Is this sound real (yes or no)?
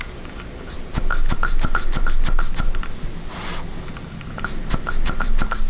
yes